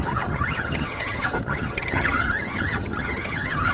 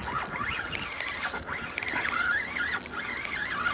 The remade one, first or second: first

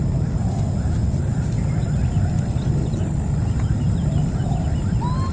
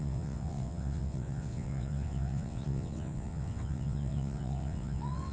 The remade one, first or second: second